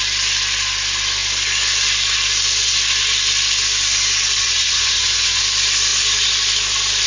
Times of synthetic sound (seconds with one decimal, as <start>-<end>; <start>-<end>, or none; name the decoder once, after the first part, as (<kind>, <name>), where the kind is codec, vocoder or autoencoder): 4.4-5.4 (vocoder, Vocos)